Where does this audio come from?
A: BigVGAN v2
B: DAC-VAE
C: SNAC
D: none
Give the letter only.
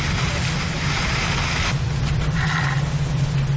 D